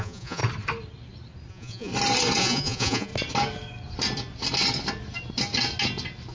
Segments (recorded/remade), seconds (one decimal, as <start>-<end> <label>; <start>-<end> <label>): 0.0-0.4 remade; 0.4-1.5 recorded; 1.5-1.9 remade; 1.9-2.4 recorded; 2.4-3.1 remade; 3.1-6.3 recorded